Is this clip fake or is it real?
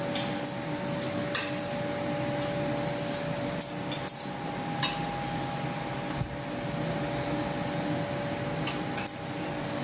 real